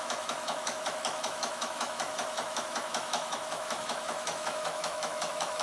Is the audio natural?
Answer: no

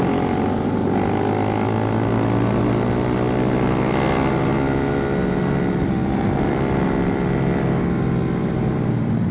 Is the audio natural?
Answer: yes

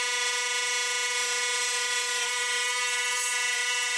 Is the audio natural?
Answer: yes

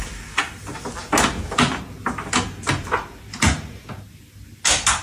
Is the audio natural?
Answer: yes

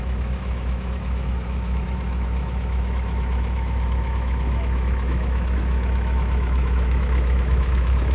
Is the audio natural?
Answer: no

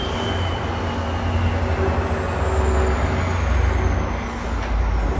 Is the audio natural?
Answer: yes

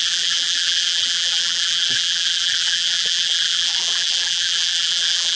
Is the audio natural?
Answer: no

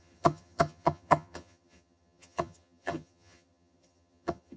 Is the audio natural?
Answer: no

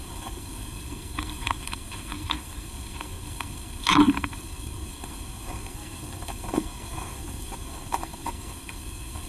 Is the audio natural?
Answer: no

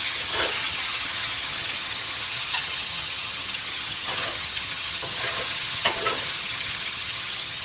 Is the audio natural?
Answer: no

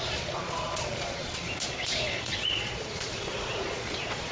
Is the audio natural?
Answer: no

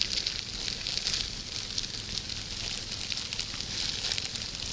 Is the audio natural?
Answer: yes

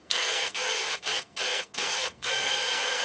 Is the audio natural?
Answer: no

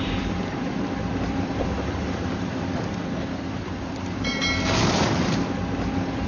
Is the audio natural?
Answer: no